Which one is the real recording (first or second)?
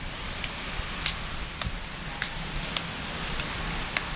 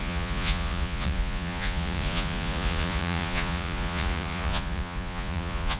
first